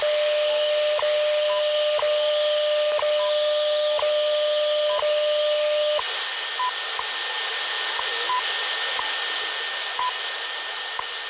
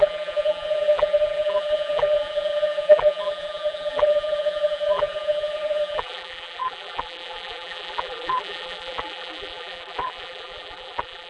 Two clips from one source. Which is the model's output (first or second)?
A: second